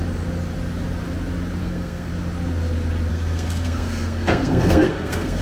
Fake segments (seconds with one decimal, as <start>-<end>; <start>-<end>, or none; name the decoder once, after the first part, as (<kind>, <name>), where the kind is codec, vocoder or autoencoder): 1.6-2.1 (codec, SNAC); 3.1-5.4